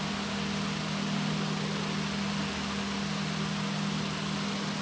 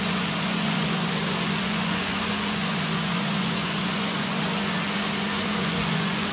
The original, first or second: first